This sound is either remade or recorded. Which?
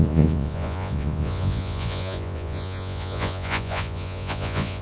remade